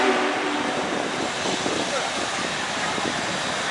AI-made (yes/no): yes